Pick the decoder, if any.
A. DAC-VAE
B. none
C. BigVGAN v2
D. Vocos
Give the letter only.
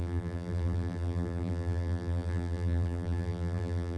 C